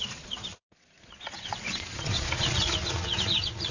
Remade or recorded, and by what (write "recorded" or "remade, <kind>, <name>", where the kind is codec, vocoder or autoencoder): remade, vocoder, Vocos